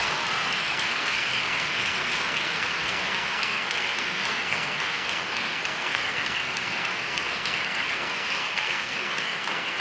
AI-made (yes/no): yes